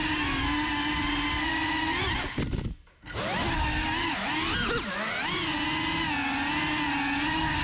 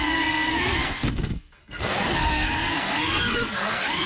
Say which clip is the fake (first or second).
second